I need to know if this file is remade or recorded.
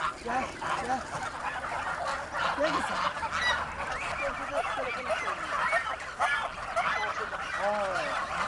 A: recorded